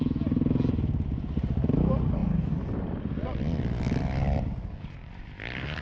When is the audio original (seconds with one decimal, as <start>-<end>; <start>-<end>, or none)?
0.0-5.8